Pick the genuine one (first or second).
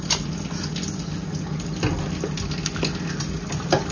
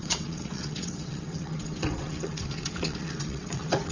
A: first